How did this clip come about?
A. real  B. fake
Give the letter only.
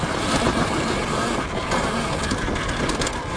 A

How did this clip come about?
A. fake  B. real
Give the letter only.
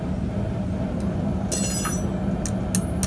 B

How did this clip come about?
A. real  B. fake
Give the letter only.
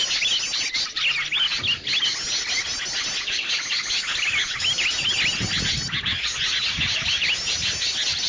A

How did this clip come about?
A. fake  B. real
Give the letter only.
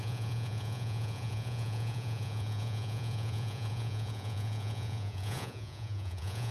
A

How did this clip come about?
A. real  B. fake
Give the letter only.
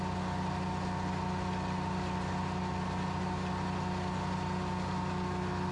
A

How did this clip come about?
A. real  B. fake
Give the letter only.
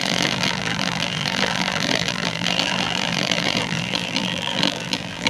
B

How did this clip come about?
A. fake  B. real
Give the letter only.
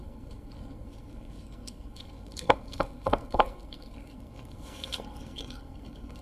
A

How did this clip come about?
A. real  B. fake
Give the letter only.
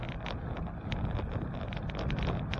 A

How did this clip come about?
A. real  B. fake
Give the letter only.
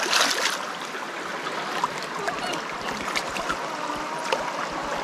A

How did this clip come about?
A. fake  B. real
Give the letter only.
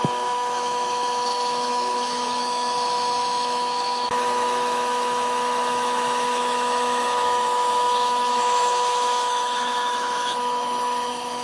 A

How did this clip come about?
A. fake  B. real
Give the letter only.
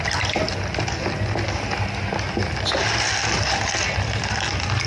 B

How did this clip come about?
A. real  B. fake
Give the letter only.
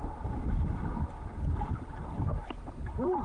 A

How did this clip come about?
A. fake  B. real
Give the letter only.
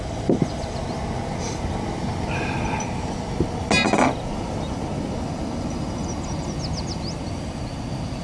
B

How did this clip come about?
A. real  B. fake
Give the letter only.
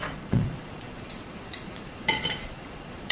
B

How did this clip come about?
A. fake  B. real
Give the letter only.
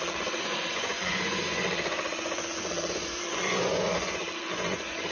A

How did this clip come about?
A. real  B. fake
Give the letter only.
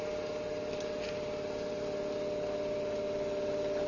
A